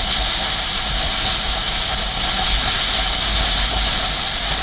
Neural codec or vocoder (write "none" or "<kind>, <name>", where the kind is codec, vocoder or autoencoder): none